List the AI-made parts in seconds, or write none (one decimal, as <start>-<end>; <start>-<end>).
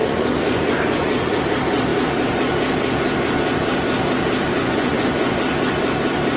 0.0-1.4; 4.5-5.4